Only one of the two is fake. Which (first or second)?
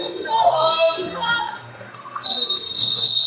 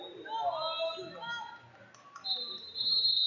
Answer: first